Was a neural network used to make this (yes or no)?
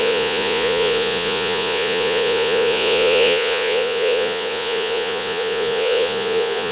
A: yes